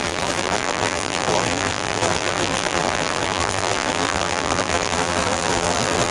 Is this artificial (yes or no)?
yes